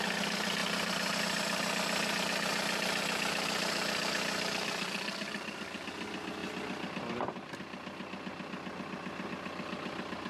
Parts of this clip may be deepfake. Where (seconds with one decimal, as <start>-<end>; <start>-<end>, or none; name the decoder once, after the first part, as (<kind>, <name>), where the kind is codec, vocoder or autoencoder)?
6.4-7.5 (vocoder, BigVGAN v2)